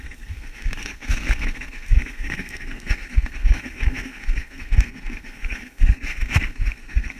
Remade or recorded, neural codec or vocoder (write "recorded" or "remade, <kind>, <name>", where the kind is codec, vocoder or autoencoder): remade, codec, SNAC